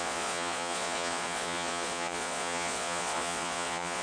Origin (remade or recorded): remade